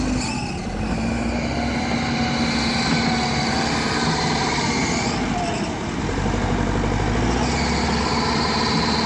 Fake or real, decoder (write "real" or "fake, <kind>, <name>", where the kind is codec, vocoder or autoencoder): real